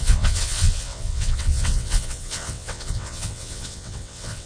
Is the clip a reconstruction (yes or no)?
yes